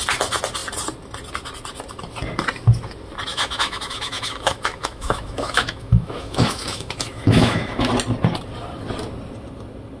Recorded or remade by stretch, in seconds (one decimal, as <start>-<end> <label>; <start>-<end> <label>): 0.0-3.3 recorded; 3.3-7.9 remade; 7.9-10.0 recorded